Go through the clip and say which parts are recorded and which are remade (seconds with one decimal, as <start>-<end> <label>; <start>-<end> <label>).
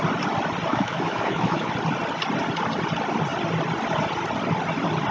0.0-0.7 recorded; 0.7-1.7 remade; 1.7-5.1 recorded